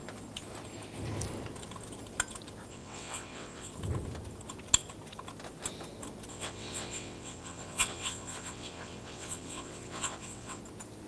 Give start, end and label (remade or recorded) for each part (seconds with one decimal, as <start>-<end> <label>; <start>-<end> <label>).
0.0-2.7 recorded; 2.7-3.7 remade; 3.7-6.3 recorded; 6.3-10.6 remade; 10.6-11.1 recorded